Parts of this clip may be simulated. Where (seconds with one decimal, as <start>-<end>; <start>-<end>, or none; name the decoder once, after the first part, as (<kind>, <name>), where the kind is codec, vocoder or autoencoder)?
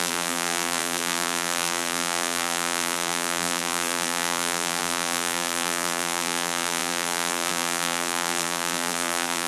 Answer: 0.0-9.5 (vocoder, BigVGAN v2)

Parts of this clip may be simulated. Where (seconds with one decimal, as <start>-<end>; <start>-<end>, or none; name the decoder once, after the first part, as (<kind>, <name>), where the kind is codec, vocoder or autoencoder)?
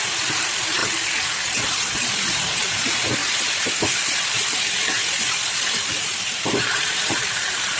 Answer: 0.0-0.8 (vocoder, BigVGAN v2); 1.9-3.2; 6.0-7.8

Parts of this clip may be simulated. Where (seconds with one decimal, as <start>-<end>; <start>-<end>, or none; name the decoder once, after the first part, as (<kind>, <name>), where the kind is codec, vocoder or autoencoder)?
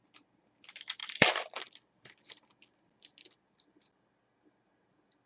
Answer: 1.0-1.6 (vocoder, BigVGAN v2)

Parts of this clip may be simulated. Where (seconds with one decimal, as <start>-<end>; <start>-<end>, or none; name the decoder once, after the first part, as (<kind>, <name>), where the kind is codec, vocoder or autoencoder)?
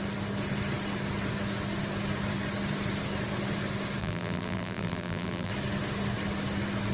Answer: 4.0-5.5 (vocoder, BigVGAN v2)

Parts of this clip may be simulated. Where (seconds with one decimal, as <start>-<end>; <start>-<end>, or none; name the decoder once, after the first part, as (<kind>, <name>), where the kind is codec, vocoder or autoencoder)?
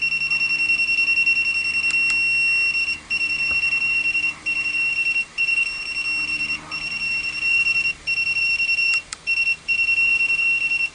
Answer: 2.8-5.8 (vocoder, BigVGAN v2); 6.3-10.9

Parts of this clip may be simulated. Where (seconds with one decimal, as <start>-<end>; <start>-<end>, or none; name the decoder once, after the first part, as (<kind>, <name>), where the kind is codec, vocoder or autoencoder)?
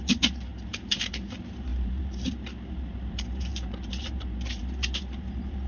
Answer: 0.0-5.7 (vocoder, BigVGAN v2)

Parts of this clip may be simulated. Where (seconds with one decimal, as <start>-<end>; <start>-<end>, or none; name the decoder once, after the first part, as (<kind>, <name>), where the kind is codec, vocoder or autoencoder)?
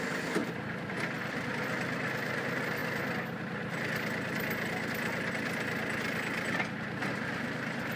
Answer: 0.4-1.5 (vocoder, BigVGAN v2)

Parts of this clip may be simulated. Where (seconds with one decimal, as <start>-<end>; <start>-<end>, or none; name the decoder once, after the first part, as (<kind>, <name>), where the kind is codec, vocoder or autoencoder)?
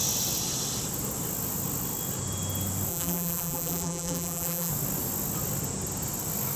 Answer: 2.9-4.7 (vocoder, BigVGAN v2)